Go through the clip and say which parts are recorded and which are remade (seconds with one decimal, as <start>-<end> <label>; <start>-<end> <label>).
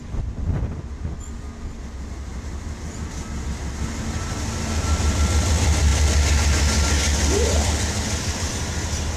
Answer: 0.0-9.2 recorded